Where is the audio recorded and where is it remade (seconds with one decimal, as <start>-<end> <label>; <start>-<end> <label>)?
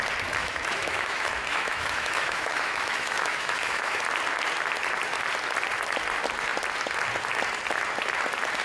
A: 0.0-0.4 recorded; 0.4-4.0 remade; 4.0-8.6 recorded